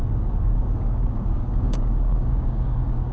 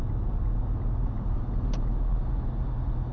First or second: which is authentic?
second